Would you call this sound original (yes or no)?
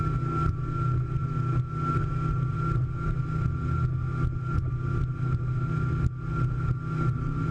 yes